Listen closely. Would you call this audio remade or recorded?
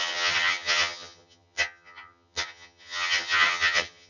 remade